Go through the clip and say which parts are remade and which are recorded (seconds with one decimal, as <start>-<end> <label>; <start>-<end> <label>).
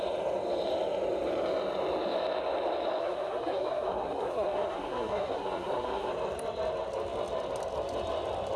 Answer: 0.0-3.0 recorded; 3.0-6.1 remade; 6.1-8.6 recorded